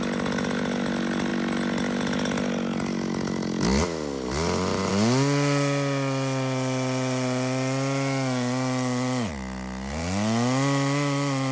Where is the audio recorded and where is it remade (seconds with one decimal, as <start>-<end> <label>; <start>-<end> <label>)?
0.0-11.5 recorded